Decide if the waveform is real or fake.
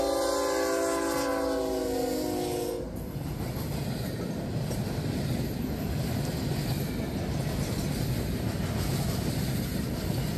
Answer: real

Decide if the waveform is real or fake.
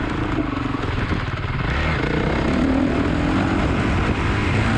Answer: real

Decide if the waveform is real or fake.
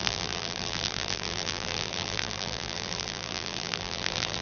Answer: fake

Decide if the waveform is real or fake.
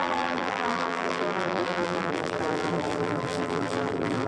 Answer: fake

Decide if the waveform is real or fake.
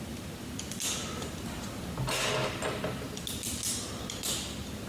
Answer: real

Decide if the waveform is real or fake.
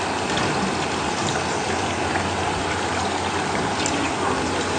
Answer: fake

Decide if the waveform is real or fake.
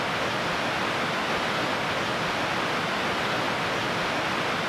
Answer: real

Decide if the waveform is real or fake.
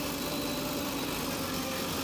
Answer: fake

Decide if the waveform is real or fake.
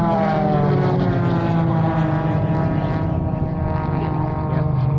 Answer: fake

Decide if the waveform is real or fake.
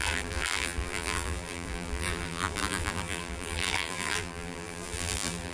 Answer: fake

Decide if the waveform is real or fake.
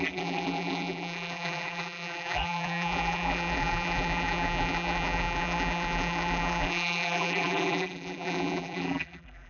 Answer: fake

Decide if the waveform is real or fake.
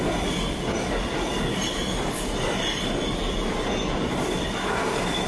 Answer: real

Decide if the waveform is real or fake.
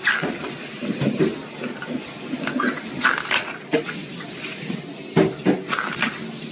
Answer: real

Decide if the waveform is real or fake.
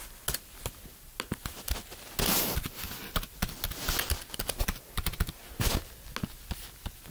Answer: real